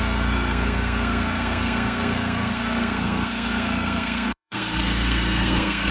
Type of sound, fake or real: fake